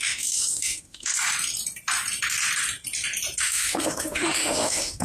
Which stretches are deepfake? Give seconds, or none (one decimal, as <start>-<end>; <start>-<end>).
0.0-1.1; 3.4-5.0

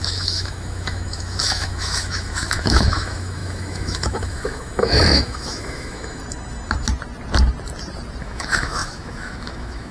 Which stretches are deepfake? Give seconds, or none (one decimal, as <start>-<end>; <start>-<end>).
0.0-6.2; 8.2-9.9

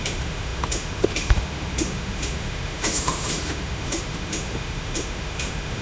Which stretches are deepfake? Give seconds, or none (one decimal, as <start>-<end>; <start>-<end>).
0.0-5.8

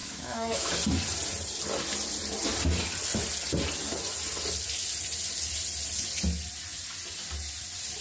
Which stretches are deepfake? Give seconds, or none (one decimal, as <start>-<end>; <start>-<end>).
0.0-0.7

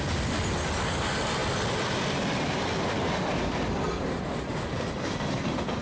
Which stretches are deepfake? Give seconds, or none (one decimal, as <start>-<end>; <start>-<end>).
none

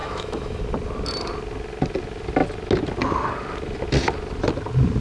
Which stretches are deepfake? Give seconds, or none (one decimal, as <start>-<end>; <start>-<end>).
0.0-0.6

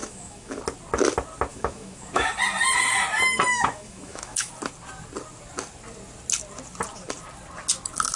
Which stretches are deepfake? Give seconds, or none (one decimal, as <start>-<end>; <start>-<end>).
0.0-0.6; 1.5-2.2; 3.5-4.5